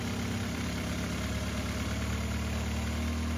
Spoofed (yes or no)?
no